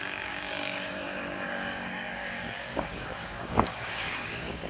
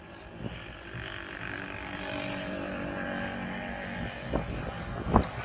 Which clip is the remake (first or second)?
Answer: first